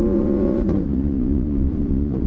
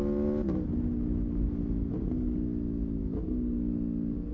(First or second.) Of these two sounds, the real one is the second